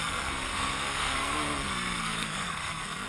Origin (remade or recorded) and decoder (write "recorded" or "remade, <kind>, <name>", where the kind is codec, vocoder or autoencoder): remade, codec, SNAC